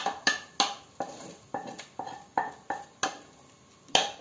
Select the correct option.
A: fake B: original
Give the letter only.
B